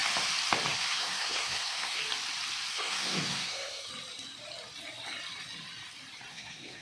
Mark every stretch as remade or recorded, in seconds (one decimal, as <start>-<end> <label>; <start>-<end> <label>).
0.0-0.7 recorded; 0.7-2.0 remade; 2.0-2.7 recorded; 2.7-3.9 remade; 3.9-6.3 recorded; 6.3-6.8 remade